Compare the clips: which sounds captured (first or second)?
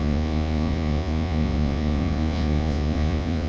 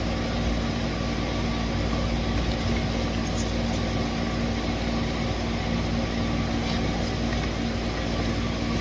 second